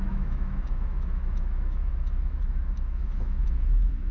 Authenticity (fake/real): fake